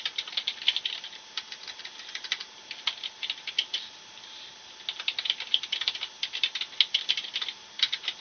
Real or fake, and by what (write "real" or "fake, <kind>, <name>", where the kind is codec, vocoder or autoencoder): real